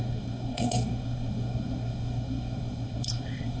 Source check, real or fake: fake